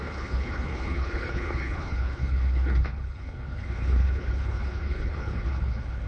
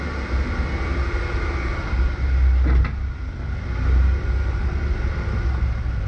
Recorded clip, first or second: second